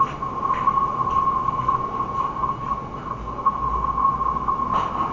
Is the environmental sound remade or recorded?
recorded